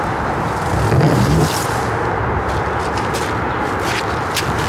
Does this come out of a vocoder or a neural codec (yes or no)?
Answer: no